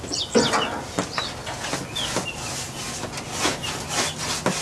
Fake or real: real